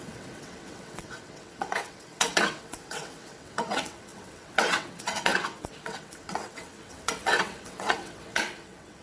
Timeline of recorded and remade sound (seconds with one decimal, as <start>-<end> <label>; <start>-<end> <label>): 0.0-9.0 remade